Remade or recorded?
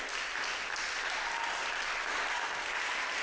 recorded